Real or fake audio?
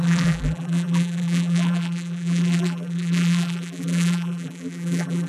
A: fake